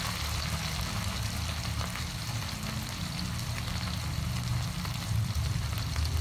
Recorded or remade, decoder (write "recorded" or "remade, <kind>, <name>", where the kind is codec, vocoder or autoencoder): recorded